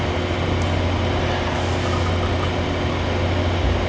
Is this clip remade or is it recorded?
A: recorded